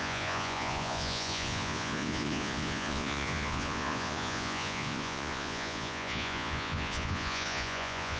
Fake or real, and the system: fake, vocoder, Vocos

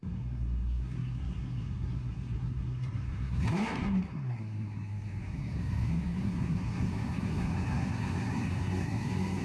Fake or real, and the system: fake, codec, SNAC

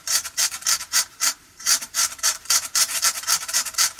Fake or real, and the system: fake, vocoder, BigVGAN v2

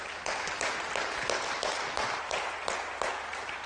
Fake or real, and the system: real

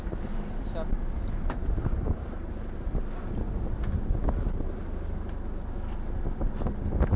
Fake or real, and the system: real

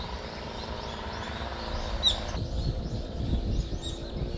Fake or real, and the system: real